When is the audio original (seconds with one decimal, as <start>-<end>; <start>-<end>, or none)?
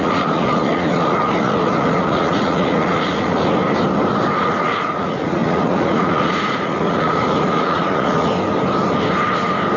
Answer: 3.6-4.4; 8.3-9.8